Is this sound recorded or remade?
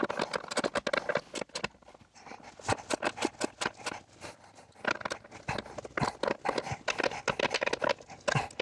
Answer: recorded